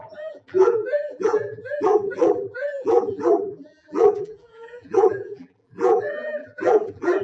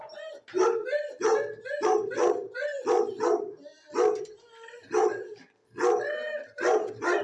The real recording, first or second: second